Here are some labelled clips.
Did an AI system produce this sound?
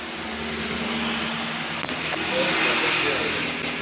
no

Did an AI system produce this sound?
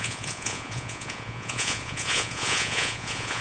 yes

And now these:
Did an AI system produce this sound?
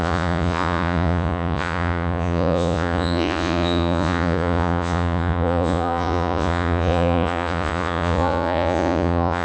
yes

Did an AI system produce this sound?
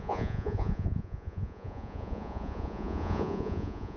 yes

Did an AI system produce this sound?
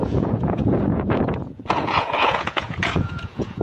yes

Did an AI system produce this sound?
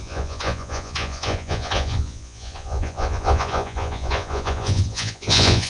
yes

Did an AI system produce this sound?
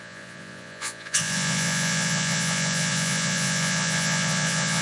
yes